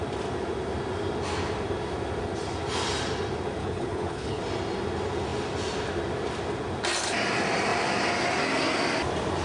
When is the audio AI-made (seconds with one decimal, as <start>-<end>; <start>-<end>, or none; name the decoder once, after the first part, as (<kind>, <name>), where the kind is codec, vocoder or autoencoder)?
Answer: 3.6-4.4 (codec, HILCodec)